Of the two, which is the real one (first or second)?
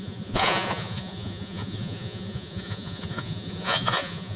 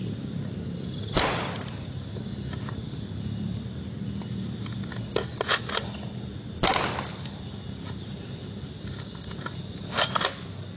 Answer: second